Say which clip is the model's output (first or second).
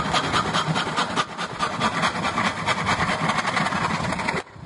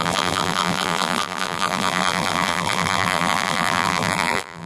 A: second